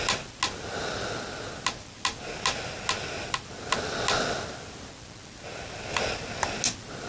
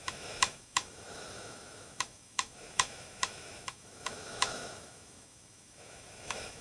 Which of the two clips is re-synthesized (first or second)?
second